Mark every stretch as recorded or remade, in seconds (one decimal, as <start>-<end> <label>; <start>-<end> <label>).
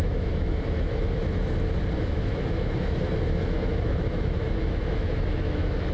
0.0-1.2 remade; 1.2-2.0 recorded; 2.0-5.9 remade